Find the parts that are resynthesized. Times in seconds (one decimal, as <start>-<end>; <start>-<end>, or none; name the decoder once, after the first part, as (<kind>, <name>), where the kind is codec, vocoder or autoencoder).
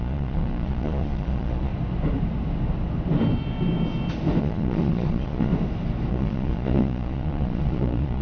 0.0-1.7 (vocoder, Vocos); 4.4-5.5; 6.1-8.2